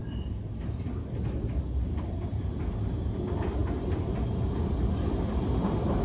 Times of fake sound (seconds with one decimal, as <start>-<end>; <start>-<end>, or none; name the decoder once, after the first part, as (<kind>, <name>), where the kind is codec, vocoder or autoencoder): none